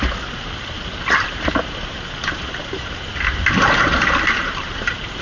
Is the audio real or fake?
fake